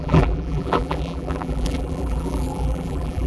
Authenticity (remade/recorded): remade